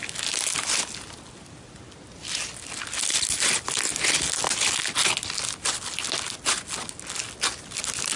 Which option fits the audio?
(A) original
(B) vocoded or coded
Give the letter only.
A